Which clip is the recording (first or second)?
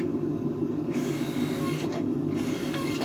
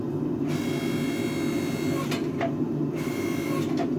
second